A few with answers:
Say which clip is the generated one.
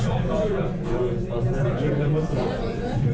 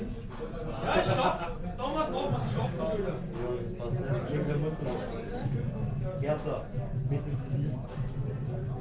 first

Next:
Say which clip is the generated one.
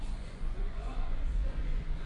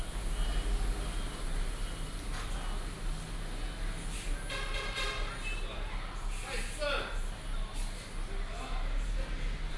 first